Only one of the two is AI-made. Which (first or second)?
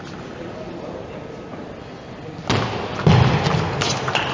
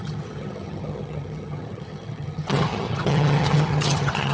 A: second